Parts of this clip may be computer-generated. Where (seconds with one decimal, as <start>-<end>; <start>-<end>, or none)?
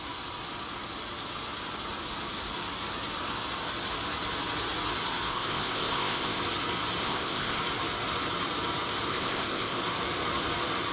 5.3-6.4; 7.0-7.6; 9.1-9.8